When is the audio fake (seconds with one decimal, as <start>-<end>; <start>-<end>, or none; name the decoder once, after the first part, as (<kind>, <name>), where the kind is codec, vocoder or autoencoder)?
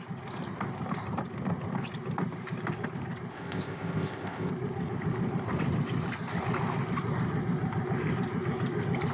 3.3-4.5 (codec, ZipCodec)